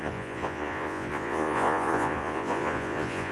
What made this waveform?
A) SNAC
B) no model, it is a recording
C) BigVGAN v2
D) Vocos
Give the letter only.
D